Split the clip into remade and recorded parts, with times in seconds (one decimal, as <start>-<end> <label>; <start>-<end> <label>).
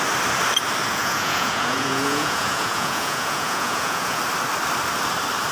0.0-0.9 recorded; 0.9-4.2 remade; 4.2-5.5 recorded